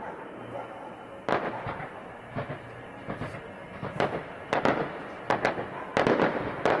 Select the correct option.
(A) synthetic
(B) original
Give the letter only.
B